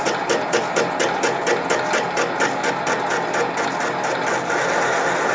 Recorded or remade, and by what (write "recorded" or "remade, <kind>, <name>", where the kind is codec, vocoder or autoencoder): recorded